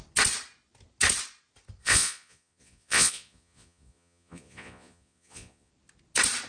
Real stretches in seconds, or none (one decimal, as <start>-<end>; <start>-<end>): 0.0-1.8; 5.7-6.5